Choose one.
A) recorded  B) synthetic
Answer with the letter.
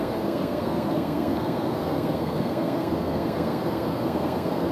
B